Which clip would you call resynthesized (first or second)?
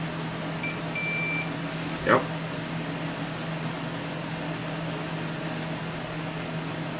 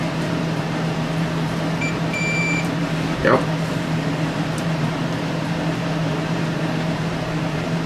second